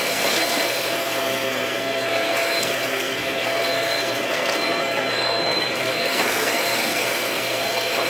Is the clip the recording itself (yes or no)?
no